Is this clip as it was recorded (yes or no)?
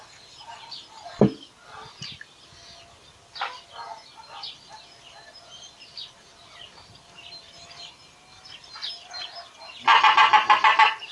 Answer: yes